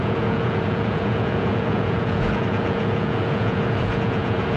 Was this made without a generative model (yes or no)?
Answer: no